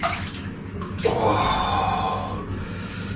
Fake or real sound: fake